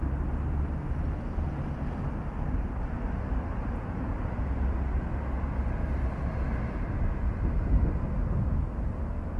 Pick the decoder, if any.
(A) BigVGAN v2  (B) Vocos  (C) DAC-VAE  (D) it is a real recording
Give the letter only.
D